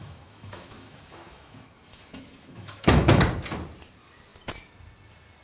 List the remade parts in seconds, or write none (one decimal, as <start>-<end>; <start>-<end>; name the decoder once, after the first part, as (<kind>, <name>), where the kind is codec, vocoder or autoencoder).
0.0-3.2 (autoencoder, DAC-VAE)

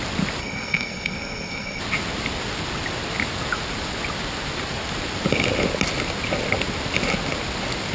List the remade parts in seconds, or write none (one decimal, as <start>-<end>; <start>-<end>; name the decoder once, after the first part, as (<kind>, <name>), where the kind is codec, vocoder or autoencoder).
0.4-1.8 (codec, SNAC)

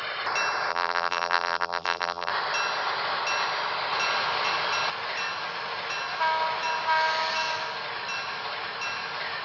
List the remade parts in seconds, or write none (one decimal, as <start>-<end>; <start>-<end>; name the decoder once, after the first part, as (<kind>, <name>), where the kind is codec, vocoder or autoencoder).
0.7-2.3 (vocoder, BigVGAN v2)

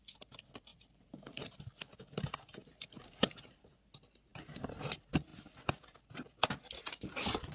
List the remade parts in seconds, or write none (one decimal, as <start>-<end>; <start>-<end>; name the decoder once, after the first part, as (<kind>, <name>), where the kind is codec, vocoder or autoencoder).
0.7-1.4 (vocoder, BigVGAN v2)